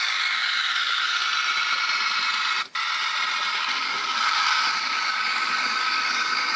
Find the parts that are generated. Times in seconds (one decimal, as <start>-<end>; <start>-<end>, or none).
0.0-1.2; 3.5-6.6